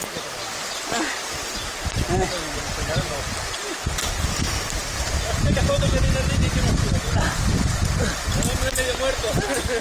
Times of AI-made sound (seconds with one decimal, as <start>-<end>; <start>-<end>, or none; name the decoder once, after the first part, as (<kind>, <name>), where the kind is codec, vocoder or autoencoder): none